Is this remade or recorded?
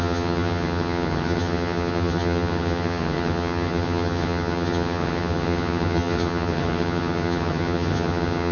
remade